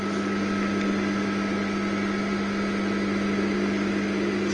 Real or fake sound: real